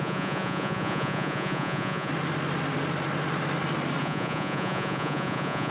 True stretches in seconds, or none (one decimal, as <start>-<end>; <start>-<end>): 2.1-4.0